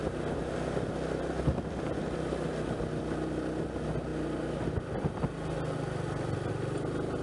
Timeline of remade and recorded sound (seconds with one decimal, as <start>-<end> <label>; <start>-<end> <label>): 0.0-7.2 recorded